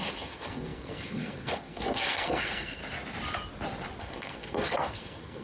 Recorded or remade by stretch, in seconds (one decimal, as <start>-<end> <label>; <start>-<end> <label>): 0.0-2.8 remade; 2.8-4.0 recorded; 4.0-5.4 remade

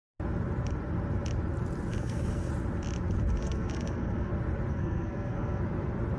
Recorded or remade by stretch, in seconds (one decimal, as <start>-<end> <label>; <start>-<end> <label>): 0.0-1.9 recorded; 1.9-2.5 remade; 2.5-3.4 recorded; 3.4-4.3 remade; 4.3-4.7 recorded; 4.7-5.6 remade; 5.6-6.2 recorded

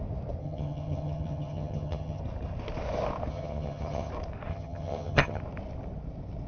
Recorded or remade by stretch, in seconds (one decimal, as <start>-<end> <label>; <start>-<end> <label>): 0.0-0.4 recorded; 0.4-2.2 remade; 2.2-3.3 recorded; 3.3-4.1 remade; 4.1-4.5 recorded; 4.5-5.4 remade; 5.4-6.5 recorded

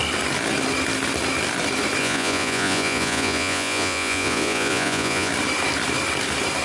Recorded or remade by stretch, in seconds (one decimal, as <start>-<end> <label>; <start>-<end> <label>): 0.0-2.0 recorded; 2.0-5.3 remade; 5.3-6.6 recorded

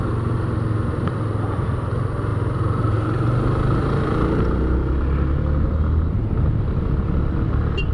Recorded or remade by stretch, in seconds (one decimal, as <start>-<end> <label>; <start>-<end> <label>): 0.0-7.9 recorded